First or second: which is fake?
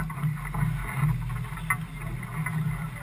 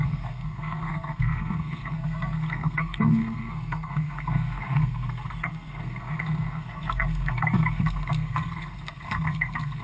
second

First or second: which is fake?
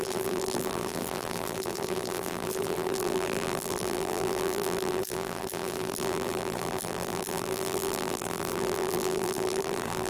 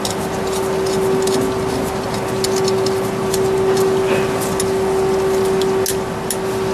first